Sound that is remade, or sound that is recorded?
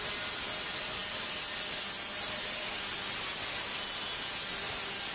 recorded